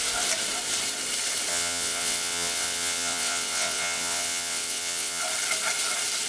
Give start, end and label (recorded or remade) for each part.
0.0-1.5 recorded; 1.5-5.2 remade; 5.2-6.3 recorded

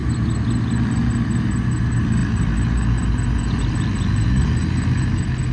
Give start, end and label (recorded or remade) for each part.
0.0-5.5 recorded

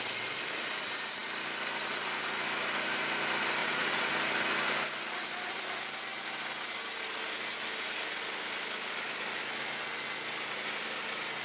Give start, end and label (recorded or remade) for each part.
0.0-3.6 recorded; 3.6-4.1 remade; 4.1-11.4 recorded

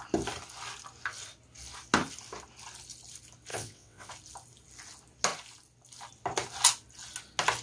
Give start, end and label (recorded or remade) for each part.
0.0-3.5 recorded; 3.5-4.1 remade; 4.1-7.6 recorded

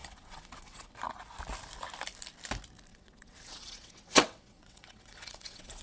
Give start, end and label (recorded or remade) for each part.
0.0-0.9 remade; 0.9-2.9 recorded; 2.9-5.8 remade

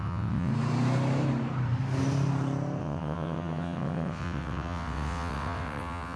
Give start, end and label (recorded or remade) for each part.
0.0-0.5 remade; 0.5-2.8 recorded; 2.8-6.2 remade

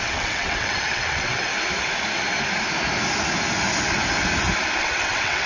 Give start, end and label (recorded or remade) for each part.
0.0-1.5 remade; 1.5-4.8 recorded; 4.8-5.5 remade

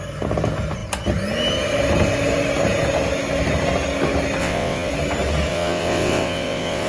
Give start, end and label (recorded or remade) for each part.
0.0-4.4 recorded; 4.4-4.9 remade; 4.9-5.5 recorded; 5.5-6.9 remade